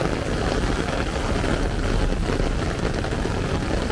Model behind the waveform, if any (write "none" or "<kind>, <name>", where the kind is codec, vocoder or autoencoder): none